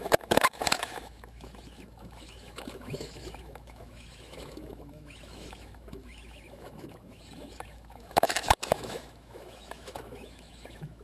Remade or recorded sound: remade